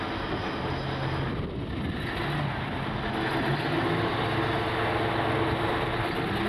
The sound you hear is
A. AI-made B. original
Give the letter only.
B